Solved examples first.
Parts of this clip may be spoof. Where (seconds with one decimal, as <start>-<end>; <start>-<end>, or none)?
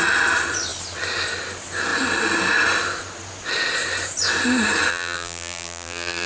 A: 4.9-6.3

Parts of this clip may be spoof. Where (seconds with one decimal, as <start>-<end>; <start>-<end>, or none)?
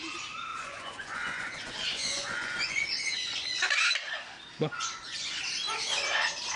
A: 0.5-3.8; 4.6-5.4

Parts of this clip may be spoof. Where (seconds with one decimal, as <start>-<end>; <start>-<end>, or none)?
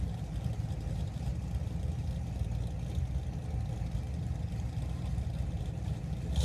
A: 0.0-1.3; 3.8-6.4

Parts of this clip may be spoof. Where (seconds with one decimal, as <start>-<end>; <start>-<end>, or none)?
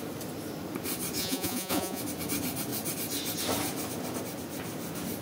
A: 1.2-2.0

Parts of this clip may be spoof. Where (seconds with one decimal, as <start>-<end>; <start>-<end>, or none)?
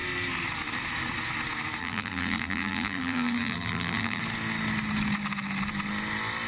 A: 1.8-4.2